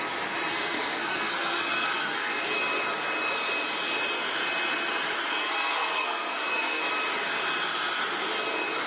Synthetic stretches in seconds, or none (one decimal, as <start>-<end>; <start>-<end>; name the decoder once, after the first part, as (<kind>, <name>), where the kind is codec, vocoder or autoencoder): 0.5-2.5 (codec, SNAC); 5.4-6.8